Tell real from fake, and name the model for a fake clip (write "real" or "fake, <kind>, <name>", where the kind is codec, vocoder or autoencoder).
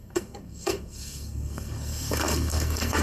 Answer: fake, codec, SNAC